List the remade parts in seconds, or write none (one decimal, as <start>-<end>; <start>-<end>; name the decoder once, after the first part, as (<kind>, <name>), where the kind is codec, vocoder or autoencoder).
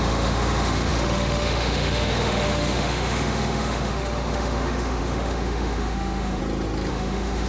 0.0-6.4 (autoencoder, DAC-VAE); 6.9-7.5